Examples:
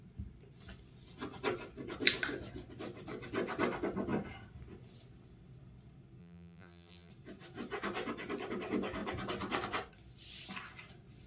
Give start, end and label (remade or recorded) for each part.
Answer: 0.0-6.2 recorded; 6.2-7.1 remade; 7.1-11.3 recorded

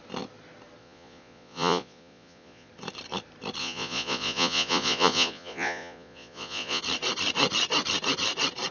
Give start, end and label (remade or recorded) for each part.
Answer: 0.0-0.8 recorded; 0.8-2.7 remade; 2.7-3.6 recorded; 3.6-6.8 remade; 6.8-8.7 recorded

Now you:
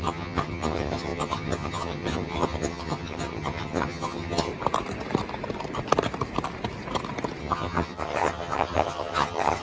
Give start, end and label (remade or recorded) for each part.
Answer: 0.0-4.5 remade; 4.5-7.4 recorded; 7.4-9.6 remade